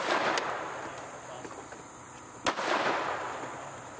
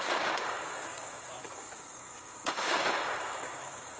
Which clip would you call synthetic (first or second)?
second